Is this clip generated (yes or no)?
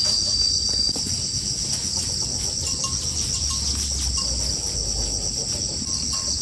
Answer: no